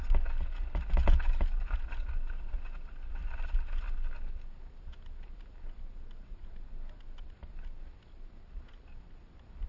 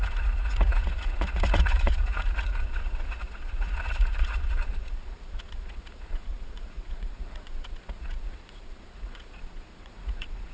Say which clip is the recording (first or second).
first